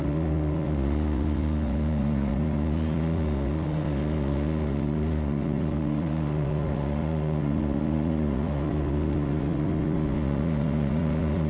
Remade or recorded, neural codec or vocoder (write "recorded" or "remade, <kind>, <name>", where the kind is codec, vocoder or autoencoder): remade, vocoder, Vocos